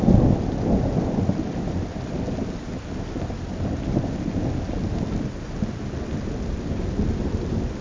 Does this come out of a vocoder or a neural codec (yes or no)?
no